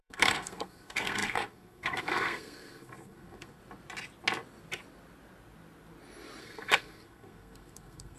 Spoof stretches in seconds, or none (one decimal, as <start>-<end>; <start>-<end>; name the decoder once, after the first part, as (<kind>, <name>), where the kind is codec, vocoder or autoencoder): 0.0-3.6 (codec, SNAC); 6.4-8.2